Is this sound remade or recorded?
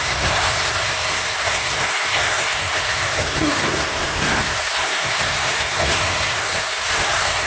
remade